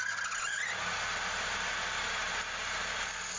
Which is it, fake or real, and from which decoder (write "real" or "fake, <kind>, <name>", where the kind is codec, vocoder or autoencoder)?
real